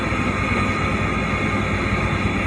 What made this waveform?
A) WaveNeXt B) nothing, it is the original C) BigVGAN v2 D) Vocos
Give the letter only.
B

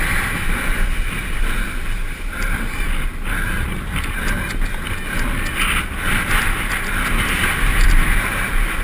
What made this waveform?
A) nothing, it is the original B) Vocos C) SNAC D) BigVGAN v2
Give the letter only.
A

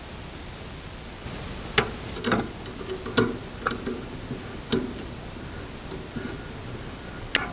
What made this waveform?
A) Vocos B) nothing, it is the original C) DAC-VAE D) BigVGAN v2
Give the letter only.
B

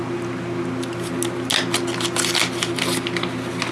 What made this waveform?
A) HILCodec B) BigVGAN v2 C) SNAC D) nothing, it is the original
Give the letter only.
D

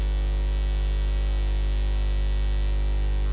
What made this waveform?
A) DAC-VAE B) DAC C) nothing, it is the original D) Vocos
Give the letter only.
C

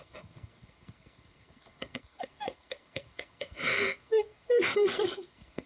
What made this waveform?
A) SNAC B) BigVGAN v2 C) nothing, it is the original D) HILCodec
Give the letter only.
A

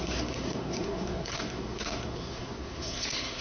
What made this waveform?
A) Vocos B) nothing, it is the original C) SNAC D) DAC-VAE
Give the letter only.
C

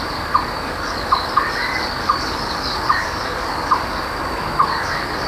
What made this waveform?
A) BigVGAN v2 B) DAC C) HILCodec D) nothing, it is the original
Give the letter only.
B